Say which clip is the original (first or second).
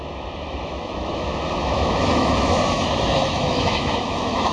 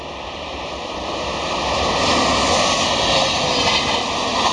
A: second